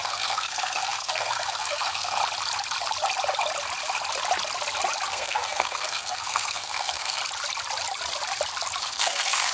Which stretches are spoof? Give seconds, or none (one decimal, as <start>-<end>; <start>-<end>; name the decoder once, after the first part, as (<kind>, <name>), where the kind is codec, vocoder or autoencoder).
0.0-2.2 (codec, SNAC); 5.1-7.2; 8.8-9.5